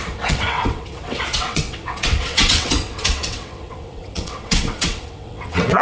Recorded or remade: remade